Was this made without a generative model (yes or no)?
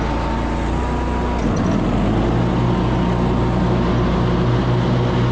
yes